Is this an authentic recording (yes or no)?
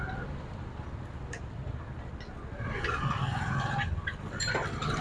yes